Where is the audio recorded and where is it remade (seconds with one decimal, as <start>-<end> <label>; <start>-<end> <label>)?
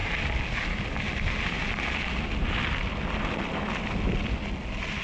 0.0-5.0 recorded